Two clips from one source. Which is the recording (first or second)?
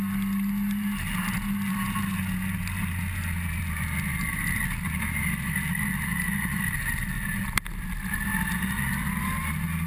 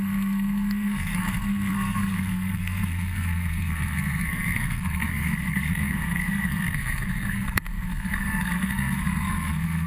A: first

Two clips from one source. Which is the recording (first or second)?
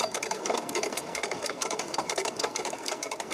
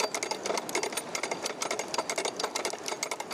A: second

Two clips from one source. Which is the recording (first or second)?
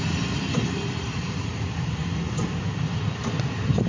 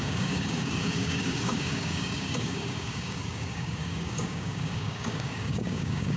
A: first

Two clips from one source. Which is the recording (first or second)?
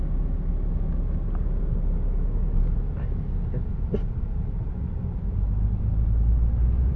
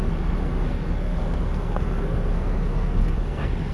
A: first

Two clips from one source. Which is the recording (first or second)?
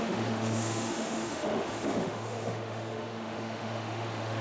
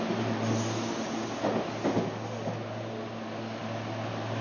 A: second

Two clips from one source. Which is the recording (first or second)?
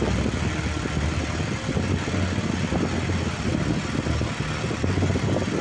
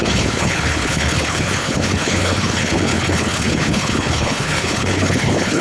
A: first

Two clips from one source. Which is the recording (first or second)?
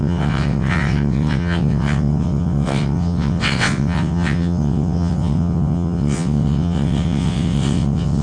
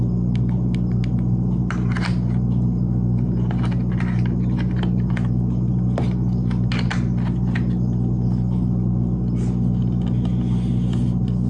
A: second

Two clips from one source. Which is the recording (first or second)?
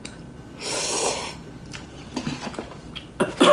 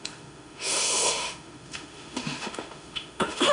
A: first